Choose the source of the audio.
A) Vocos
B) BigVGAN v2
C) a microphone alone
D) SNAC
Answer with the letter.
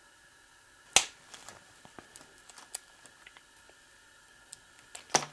C